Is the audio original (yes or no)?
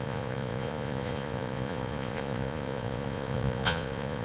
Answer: no